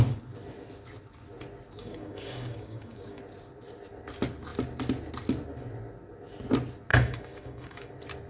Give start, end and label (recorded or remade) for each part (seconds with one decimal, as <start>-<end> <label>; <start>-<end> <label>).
0.0-1.8 recorded; 1.8-3.2 remade; 3.2-6.9 recorded; 6.9-7.9 remade; 7.9-8.3 recorded